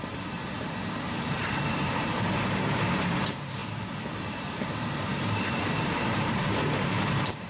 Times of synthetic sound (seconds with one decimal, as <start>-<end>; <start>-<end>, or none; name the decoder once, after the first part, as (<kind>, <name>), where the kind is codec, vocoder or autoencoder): 0.0-3.6 (vocoder, BigVGAN v2); 4.2-7.5